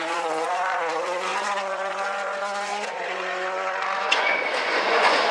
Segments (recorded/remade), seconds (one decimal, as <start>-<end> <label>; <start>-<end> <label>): 0.0-5.3 remade